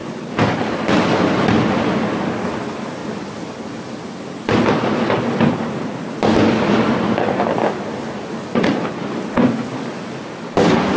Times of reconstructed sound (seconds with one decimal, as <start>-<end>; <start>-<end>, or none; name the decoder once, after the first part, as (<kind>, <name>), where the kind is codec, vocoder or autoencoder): 0.0-1.9 (vocoder, BigVGAN v2); 3.0-5.9